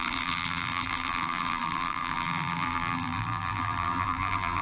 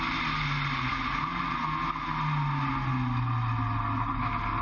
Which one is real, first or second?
second